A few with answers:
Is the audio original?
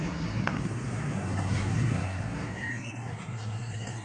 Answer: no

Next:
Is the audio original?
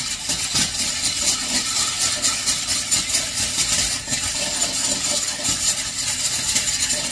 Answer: yes